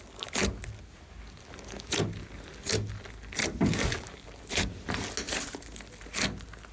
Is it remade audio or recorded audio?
recorded